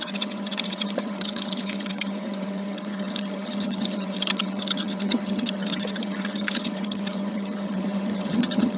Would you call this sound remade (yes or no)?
yes